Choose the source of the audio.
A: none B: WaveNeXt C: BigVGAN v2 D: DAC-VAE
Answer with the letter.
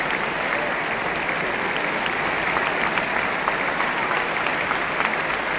A